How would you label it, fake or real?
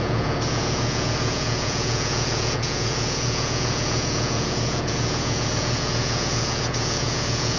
fake